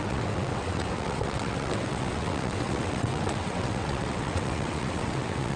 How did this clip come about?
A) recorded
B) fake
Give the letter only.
B